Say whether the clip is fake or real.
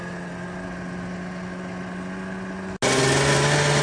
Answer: real